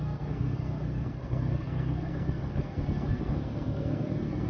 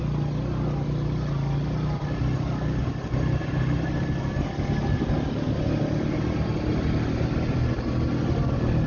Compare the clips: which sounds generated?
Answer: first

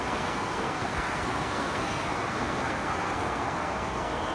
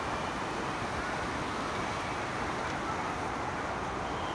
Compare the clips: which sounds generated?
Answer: first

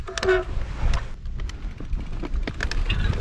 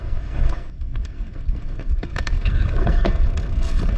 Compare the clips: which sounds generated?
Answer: second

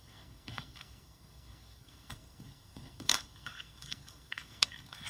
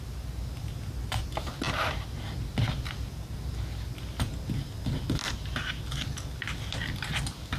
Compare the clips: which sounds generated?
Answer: first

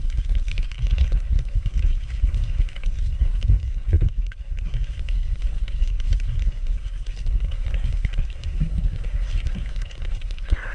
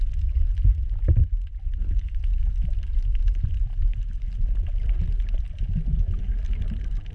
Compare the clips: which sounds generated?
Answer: first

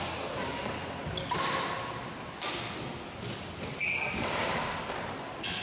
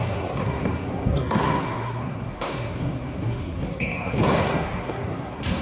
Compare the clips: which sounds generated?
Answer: second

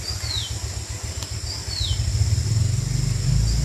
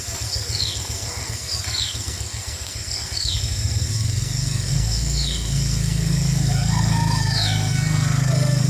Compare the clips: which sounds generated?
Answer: second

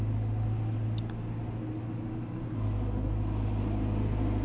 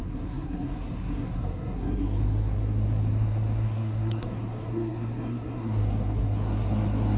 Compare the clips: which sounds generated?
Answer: second